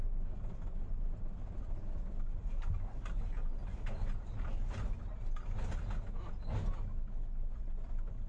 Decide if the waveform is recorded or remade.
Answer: recorded